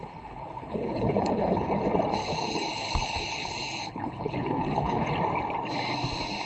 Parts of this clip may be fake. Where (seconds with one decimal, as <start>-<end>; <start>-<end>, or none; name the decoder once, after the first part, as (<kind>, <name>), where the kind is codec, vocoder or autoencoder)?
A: 0.0-1.8 (codec, HILCodec); 2.2-5.1